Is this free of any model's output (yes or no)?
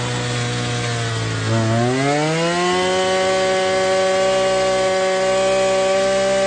yes